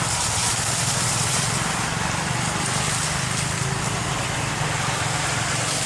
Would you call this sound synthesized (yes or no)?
no